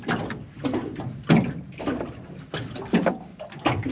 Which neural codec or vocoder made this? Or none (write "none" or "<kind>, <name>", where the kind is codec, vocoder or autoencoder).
none